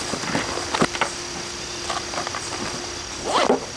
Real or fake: real